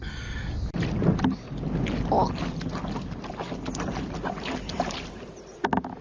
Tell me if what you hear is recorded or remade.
recorded